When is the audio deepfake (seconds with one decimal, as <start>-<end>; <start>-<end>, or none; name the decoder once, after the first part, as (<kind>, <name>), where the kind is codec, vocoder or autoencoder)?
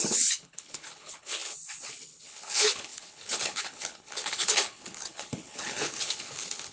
0.0-6.7 (codec, HILCodec)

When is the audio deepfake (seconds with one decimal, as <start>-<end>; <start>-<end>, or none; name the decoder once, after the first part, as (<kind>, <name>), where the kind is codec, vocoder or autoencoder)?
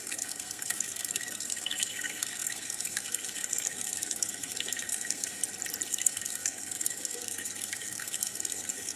0.0-5.4 (codec, SNAC); 5.9-9.0